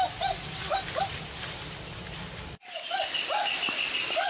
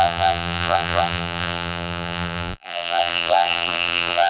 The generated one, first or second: second